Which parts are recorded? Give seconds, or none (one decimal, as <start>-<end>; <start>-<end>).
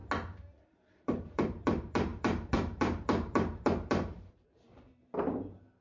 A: 0.0-0.6